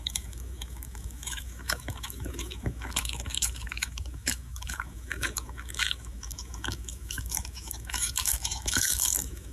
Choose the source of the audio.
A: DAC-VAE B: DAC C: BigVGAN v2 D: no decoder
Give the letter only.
A